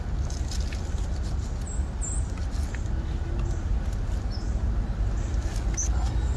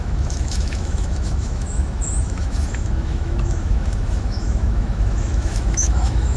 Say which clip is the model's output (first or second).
second